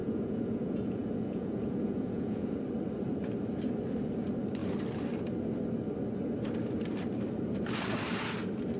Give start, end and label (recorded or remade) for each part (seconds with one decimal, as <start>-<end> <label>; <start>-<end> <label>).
0.0-2.6 remade; 2.6-8.8 recorded